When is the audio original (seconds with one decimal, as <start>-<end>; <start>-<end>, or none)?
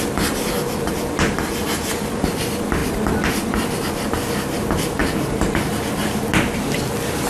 0.0-5.0; 5.8-7.3